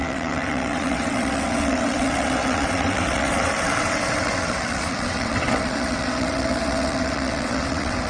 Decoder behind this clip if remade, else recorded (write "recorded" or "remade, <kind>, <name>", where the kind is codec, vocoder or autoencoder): remade, vocoder, WaveNeXt